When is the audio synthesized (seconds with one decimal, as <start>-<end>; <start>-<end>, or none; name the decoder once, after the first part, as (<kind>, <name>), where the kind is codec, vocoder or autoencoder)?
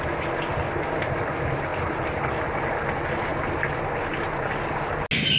none